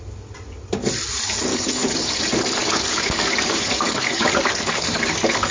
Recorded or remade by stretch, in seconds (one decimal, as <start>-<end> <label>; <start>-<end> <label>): 0.0-1.5 recorded; 1.5-2.2 remade; 2.2-2.6 recorded; 2.6-5.5 remade